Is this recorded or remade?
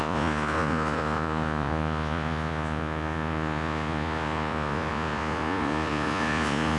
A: remade